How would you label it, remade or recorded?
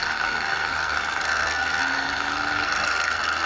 remade